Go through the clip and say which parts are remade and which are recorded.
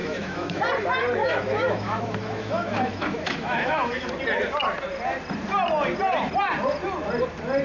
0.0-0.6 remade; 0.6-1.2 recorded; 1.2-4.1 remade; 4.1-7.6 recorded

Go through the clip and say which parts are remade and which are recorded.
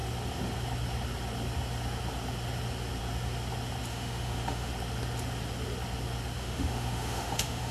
0.0-3.9 recorded; 3.9-4.7 remade; 4.7-6.4 recorded; 6.4-7.7 remade